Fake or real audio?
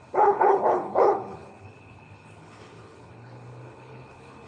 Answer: fake